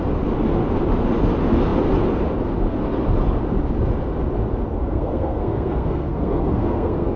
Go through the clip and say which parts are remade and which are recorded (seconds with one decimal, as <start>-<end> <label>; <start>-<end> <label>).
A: 0.0-4.8 recorded; 4.8-7.2 remade